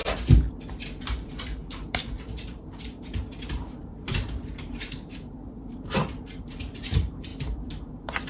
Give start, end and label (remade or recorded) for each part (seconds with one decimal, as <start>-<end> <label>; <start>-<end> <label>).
0.0-1.0 recorded; 1.0-7.3 remade; 7.3-7.9 recorded; 7.9-8.3 remade